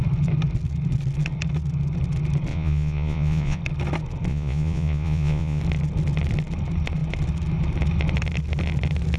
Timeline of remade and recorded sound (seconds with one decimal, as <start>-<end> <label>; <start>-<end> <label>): 0.0-2.5 recorded; 2.5-3.6 remade; 3.6-4.3 recorded; 4.3-5.6 remade; 5.6-9.2 recorded